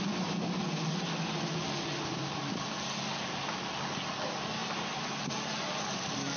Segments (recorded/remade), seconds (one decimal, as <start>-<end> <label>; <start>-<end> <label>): 0.0-6.4 recorded